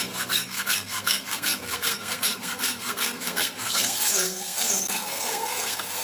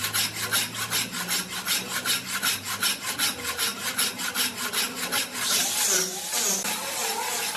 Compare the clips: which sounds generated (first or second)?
first